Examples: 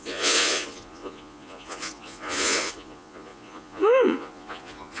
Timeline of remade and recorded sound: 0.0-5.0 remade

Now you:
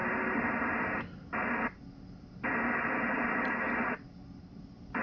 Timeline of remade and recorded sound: 0.0-5.0 recorded

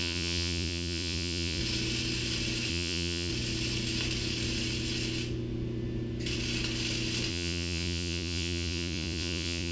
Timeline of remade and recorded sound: 0.0-1.6 remade; 1.6-2.7 recorded; 2.7-3.3 remade; 3.3-7.3 recorded; 7.3-9.7 remade

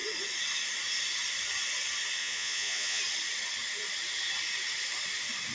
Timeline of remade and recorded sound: 0.0-2.2 recorded; 2.2-3.0 remade; 3.0-5.5 recorded

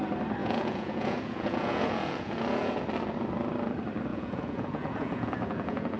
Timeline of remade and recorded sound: 0.0-0.4 recorded; 0.4-2.8 remade; 2.8-4.1 recorded; 4.1-6.0 remade

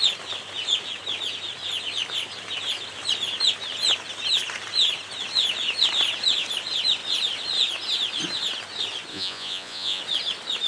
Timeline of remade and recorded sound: 0.0-9.1 recorded; 9.1-10.0 remade; 10.0-10.7 recorded

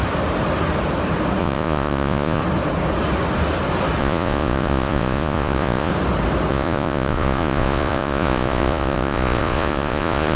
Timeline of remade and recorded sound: 0.0-1.4 recorded; 1.4-2.4 remade; 2.4-4.0 recorded; 4.0-5.9 remade; 5.9-6.5 recorded; 6.5-10.4 remade

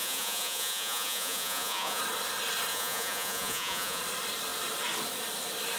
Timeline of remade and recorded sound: 0.0-2.0 remade; 2.0-2.7 recorded; 2.7-4.0 remade; 4.0-5.8 recorded